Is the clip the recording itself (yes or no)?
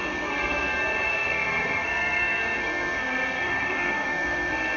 no